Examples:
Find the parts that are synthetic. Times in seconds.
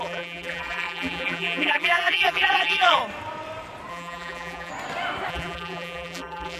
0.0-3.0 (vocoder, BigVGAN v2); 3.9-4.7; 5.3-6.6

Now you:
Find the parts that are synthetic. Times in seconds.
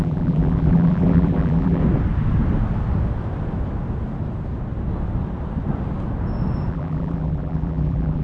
0.0-1.8 (vocoder, BigVGAN v2); 6.7-8.2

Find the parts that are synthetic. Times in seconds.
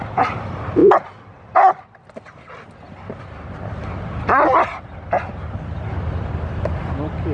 none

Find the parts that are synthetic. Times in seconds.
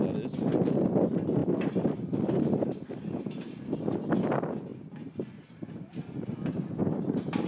1.4-2.4 (vocoder, BigVGAN v2); 6.8-7.5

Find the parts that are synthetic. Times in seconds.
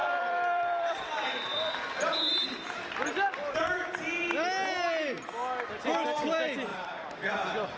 0.0-3.9 (vocoder, BigVGAN v2); 6.7-7.3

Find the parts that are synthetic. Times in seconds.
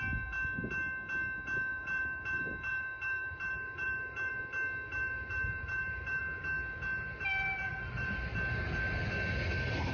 1.7-4.4 (vocoder, BigVGAN v2); 4.9-6.2; 7.7-8.3